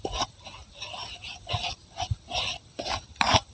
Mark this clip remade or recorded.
recorded